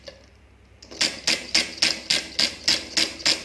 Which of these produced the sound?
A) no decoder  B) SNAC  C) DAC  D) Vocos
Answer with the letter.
A